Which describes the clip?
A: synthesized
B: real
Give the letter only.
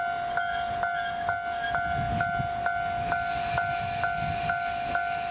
B